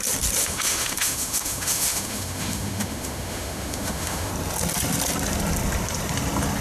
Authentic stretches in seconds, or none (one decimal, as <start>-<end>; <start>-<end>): 0.0-0.4; 4.3-6.6